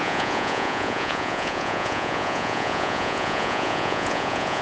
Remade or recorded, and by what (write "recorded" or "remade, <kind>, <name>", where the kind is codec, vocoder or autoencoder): remade, vocoder, Vocos